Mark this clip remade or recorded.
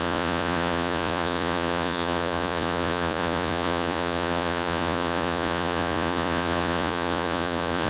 remade